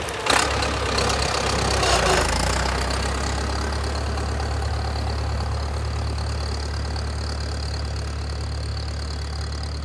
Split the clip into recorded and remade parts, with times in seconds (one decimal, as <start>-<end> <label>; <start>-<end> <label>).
0.0-9.8 recorded